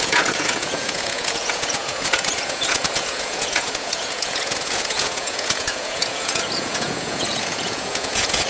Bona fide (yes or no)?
no